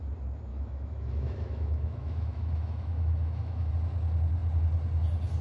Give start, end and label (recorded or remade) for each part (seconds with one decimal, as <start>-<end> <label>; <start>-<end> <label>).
0.0-0.5 recorded; 0.5-3.7 remade; 3.7-5.4 recorded